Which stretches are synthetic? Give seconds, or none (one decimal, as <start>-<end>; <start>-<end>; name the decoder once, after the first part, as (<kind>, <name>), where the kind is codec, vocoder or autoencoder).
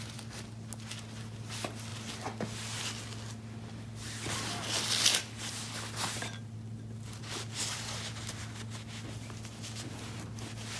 none